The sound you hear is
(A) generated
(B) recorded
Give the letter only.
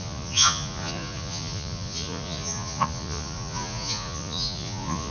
A